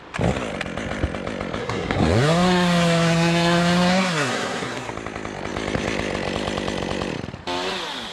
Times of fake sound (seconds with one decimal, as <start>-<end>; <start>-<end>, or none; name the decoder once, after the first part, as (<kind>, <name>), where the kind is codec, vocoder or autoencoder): 1.6-4.9 (codec, SNAC)